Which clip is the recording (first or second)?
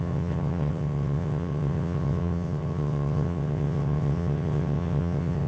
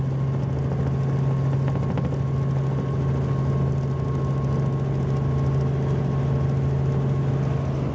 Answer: second